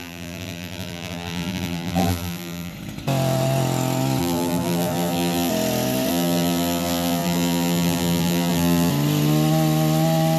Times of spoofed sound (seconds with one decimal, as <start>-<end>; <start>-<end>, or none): 0.0-2.7; 4.2-5.5; 6.1-8.9